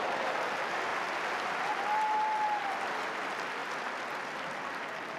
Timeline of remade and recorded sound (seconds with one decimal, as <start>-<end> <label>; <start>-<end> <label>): 0.0-5.2 recorded